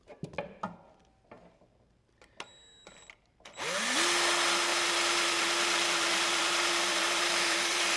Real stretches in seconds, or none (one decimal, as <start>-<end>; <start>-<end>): 0.0-4.7